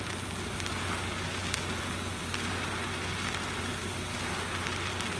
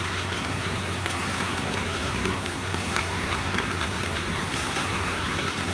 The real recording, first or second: first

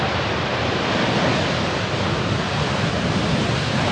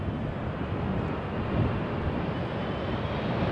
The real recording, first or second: second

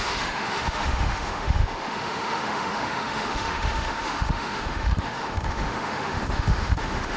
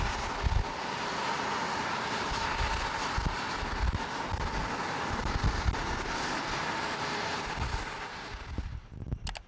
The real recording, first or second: second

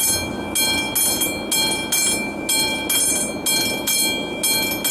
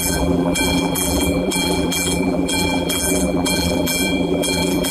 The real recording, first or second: first